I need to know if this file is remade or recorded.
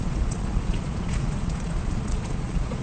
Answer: remade